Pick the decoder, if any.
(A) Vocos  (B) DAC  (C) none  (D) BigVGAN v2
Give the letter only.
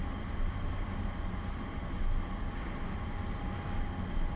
C